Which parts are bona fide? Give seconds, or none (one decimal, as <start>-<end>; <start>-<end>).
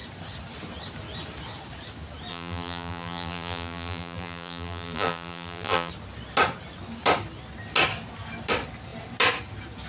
0.0-2.3; 5.9-9.9